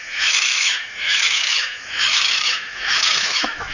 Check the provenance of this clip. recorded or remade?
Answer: remade